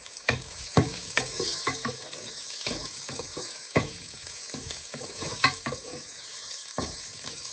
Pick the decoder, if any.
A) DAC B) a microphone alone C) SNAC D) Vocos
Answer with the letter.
A